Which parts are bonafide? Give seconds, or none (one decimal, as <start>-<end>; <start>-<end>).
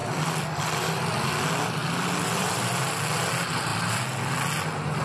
1.0-1.8; 2.9-5.0